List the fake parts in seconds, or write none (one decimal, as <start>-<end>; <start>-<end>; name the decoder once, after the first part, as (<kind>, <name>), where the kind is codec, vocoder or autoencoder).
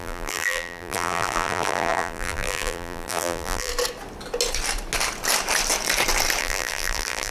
0.0-3.7 (vocoder, BigVGAN v2); 6.4-7.3